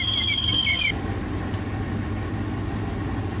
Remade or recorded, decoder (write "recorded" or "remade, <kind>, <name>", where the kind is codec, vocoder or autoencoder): recorded